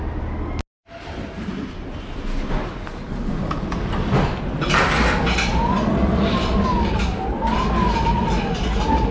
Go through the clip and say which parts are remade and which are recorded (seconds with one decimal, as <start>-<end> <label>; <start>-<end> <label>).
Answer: 0.0-9.1 recorded